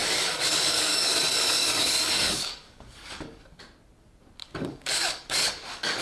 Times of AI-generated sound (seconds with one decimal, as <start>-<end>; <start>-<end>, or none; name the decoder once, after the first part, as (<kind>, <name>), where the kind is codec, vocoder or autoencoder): 0.0-3.6 (codec, DAC); 4.4-6.0